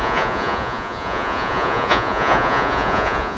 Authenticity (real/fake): fake